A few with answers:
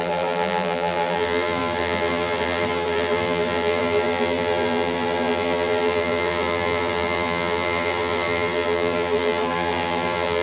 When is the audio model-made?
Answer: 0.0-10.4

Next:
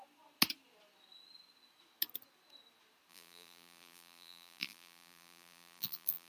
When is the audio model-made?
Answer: 3.1-6.3

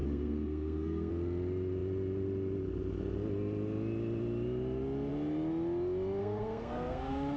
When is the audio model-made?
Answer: 0.0-1.1; 6.2-7.4

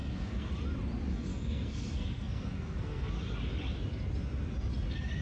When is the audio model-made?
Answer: 0.0-0.5; 1.1-3.1

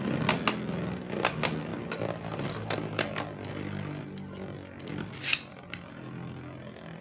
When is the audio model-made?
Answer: none

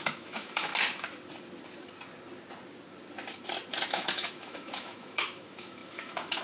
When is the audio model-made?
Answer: 0.0-0.7; 3.9-6.4

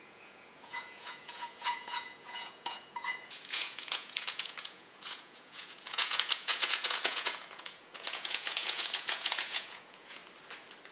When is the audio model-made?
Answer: 0.0-10.2